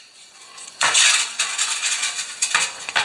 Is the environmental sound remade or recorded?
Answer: remade